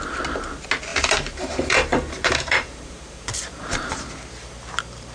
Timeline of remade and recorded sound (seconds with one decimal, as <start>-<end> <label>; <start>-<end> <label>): 0.0-0.9 recorded; 0.9-4.0 remade; 4.0-5.1 recorded